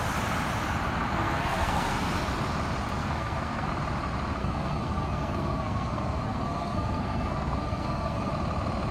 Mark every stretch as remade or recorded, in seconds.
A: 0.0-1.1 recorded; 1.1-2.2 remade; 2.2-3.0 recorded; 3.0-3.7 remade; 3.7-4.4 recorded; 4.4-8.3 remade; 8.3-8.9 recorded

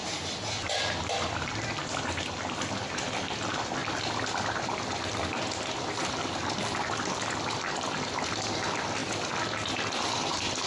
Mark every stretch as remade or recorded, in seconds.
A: 0.0-0.7 recorded; 0.7-10.7 remade

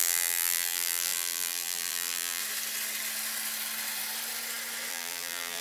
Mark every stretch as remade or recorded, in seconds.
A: 0.0-2.4 remade; 2.4-4.9 recorded; 4.9-5.6 remade

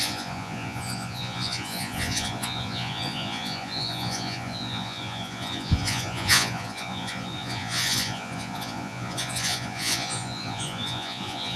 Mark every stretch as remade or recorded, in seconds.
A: 0.0-11.6 remade

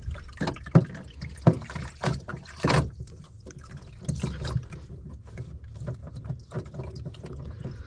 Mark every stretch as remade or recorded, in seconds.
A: 0.0-7.9 recorded

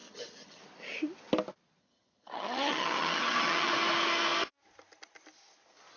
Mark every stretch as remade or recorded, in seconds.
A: 0.0-0.6 remade; 0.6-1.8 recorded; 1.8-3.7 remade; 3.7-6.0 recorded